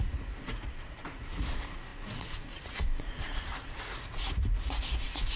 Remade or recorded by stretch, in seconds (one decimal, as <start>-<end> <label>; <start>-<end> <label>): 0.0-5.4 remade